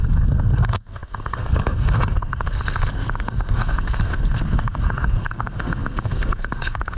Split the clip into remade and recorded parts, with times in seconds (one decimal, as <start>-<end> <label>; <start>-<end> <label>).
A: 0.0-7.0 remade